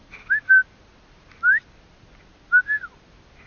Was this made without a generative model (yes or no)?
yes